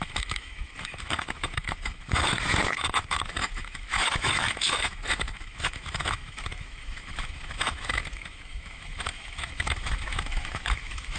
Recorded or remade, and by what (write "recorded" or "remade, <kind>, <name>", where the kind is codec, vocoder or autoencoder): remade, autoencoder, DAC-VAE